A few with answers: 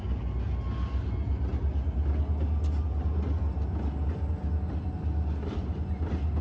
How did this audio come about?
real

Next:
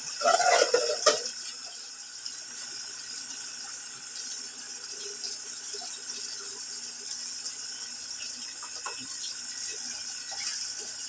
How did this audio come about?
real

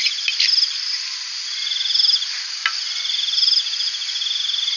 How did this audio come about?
real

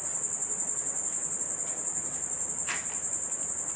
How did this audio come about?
real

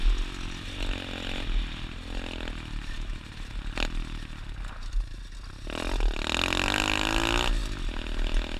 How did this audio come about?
real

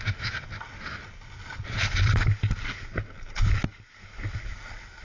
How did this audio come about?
real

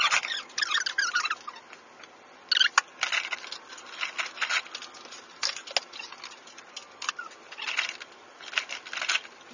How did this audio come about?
real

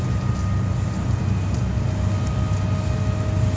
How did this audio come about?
real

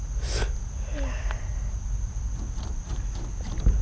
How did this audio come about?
real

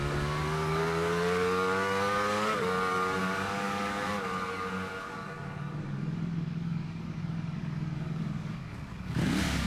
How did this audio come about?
fake